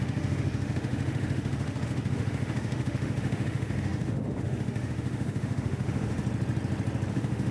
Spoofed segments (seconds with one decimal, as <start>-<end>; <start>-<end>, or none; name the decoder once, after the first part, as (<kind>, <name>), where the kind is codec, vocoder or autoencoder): 0.0-6.2 (autoencoder, DAC-VAE); 7.1-7.5